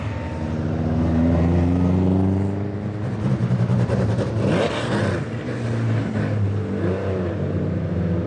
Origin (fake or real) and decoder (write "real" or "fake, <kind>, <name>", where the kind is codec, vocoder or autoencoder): real